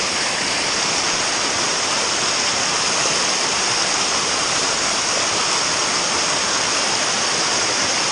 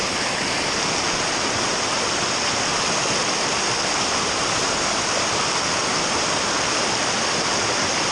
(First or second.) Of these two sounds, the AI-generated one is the first